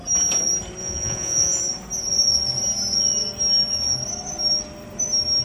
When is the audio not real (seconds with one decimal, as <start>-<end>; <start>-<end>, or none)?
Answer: 0.8-1.6

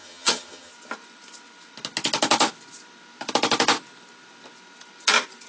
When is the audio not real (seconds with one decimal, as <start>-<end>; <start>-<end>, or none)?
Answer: 0.0-0.7